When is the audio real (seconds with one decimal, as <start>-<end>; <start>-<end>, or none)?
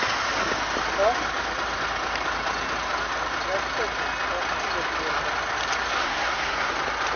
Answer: 0.0-6.0; 6.7-7.2